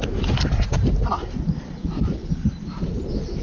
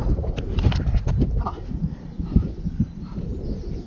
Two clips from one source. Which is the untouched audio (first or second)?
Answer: first